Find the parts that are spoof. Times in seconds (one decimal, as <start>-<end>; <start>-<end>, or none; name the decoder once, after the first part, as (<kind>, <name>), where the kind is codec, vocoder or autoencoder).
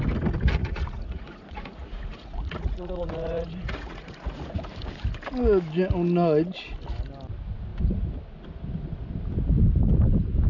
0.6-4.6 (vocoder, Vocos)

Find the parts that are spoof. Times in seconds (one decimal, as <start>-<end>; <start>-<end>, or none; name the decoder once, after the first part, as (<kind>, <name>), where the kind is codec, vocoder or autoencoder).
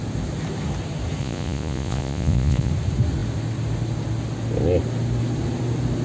1.2-2.7 (vocoder, Vocos)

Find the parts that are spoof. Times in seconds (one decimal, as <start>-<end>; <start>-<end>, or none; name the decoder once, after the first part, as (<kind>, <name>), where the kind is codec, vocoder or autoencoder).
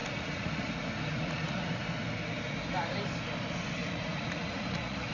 0.0-0.7 (vocoder, Vocos); 1.1-1.7; 3.8-5.1